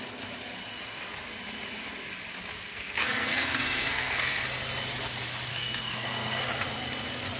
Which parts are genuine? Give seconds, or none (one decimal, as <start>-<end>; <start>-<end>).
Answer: 0.0-2.7; 4.4-5.5; 6.4-7.4